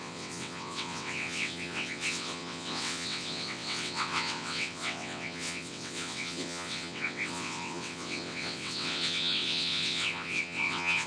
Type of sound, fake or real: fake